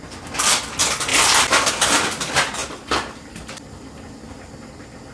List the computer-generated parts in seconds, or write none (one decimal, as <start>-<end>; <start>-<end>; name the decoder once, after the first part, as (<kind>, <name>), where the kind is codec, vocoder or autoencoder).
1.1-1.7 (vocoder, BigVGAN v2); 2.6-4.6